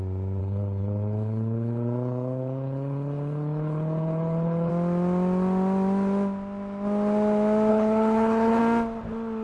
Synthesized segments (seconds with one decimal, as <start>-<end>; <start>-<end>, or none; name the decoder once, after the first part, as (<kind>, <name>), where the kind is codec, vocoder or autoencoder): 0.4-4.7 (codec, HILCodec); 7.7-8.6